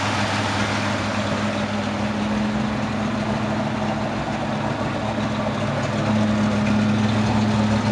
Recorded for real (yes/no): yes